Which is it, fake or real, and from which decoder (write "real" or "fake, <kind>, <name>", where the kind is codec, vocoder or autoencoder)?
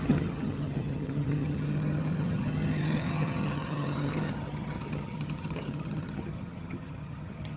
fake, vocoder, HiFi-GAN